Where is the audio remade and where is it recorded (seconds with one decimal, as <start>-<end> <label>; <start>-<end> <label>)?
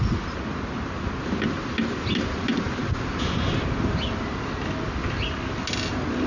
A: 0.0-6.3 recorded